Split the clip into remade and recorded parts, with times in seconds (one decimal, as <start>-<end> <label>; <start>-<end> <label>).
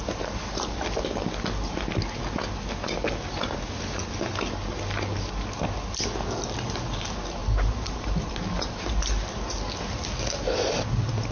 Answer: 0.0-0.8 remade; 0.8-7.4 recorded; 7.4-8.3 remade; 8.3-11.3 recorded